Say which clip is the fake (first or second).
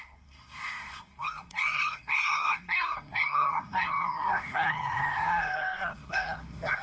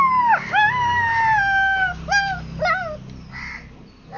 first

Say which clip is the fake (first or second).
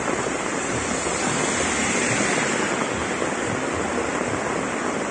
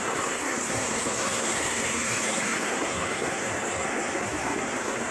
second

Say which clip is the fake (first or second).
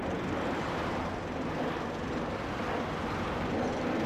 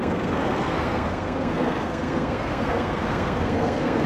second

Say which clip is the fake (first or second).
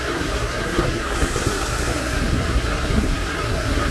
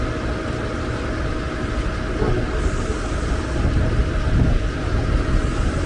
first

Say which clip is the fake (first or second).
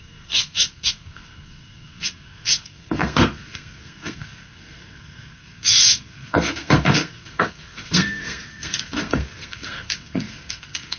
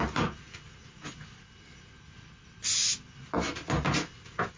first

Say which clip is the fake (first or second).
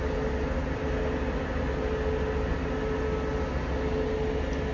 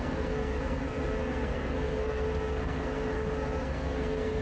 second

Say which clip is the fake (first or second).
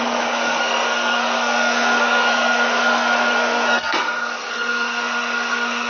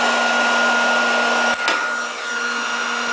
first